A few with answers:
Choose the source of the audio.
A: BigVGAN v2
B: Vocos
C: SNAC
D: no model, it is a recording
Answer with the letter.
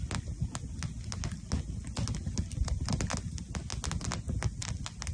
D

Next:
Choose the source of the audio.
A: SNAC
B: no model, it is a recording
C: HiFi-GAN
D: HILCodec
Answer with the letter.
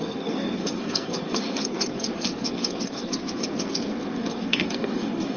A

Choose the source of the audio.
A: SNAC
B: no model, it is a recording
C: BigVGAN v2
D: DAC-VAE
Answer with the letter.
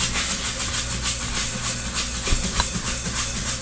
B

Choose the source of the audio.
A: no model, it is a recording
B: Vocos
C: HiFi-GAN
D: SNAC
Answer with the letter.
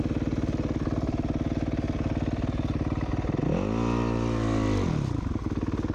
A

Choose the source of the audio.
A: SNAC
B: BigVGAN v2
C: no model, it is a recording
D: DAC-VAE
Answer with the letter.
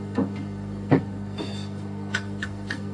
A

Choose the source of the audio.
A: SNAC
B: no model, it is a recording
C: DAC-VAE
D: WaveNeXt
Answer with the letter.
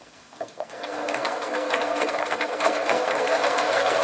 A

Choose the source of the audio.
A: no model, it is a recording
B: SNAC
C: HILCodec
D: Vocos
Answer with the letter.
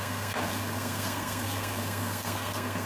B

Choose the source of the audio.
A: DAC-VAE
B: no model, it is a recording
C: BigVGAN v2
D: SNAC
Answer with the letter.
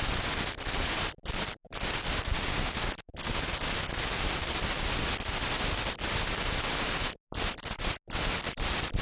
B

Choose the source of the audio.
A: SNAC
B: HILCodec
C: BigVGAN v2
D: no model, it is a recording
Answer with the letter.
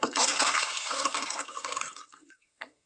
A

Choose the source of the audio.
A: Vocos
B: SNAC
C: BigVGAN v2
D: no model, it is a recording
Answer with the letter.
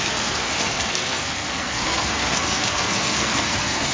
B